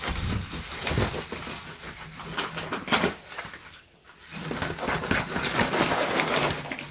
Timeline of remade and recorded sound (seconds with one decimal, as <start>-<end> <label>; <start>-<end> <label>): 0.0-6.9 recorded